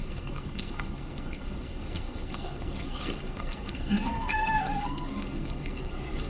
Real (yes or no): no